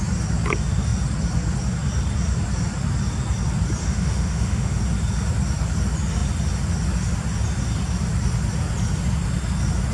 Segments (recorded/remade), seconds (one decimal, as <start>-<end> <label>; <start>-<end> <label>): 0.0-3.8 recorded; 3.8-4.8 remade; 4.8-9.9 recorded